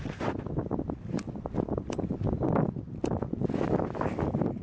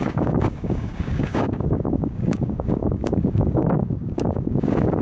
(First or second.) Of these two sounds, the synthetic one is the second